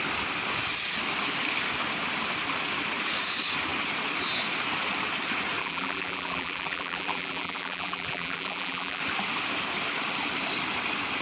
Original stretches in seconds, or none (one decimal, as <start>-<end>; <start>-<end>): 0.0-5.6; 9.0-11.2